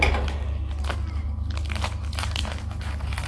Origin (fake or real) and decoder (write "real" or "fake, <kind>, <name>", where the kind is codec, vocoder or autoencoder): real